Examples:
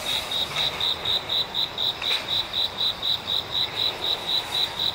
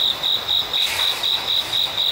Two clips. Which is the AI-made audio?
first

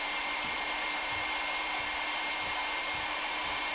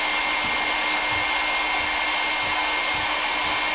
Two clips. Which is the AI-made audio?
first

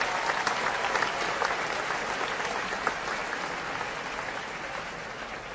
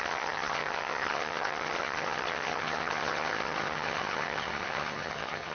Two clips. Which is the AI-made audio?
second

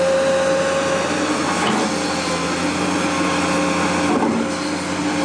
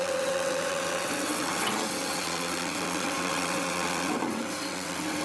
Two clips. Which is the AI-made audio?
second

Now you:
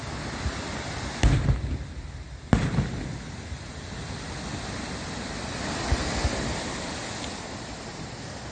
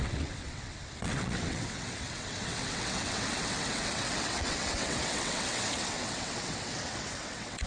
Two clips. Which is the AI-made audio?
second